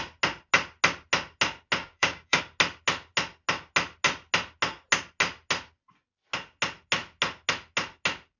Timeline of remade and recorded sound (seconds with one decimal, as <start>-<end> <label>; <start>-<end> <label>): 0.0-1.8 recorded; 1.8-2.4 remade; 2.4-8.4 recorded